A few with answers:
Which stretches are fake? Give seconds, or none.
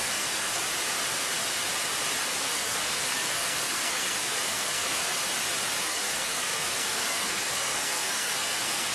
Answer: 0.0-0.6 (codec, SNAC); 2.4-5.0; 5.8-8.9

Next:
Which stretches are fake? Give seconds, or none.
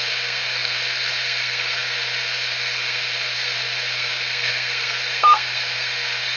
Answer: 0.0-6.4 (codec, SNAC)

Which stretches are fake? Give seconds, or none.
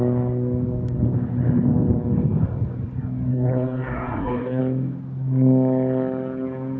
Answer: 3.3-4.6 (codec, SNAC)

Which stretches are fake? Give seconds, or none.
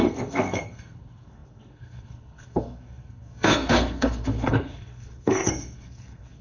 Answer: 0.0-6.4 (codec, SNAC)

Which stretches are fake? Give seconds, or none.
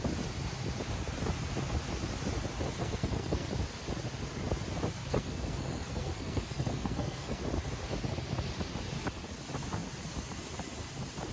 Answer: 2.8-3.5 (codec, SNAC); 5.0-7.4